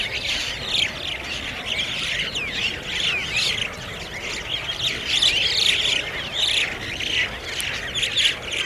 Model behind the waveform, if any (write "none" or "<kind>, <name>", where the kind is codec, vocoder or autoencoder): none